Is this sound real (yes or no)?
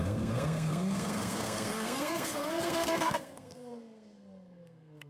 no